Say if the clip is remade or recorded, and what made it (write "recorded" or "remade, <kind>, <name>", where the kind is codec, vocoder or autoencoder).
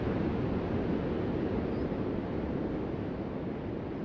recorded